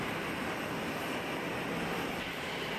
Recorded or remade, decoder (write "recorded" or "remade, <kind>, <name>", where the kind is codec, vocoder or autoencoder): recorded